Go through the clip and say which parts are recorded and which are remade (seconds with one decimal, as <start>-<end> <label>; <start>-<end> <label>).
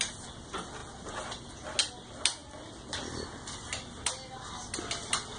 0.0-5.4 recorded